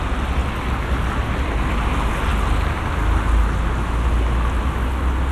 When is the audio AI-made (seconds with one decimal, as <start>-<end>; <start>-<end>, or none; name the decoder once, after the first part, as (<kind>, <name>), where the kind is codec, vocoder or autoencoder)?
none

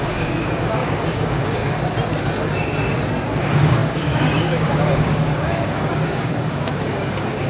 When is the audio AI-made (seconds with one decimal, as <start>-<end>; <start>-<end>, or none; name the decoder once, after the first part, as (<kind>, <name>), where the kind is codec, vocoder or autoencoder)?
0.0-1.6 (codec, DAC); 3.4-7.5

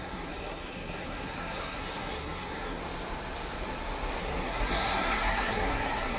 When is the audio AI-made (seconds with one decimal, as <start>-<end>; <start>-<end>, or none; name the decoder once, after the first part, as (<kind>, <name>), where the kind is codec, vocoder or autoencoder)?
0.0-2.8 (codec, SNAC); 4.2-6.2

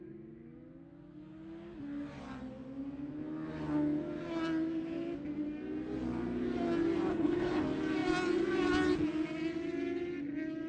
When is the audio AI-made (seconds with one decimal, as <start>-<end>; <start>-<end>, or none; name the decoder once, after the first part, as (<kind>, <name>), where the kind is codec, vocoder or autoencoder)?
7.1-7.6 (codec, HILCodec)